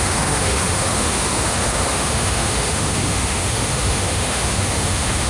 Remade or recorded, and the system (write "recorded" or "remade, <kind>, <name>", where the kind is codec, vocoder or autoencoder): remade, autoencoder, DAC-VAE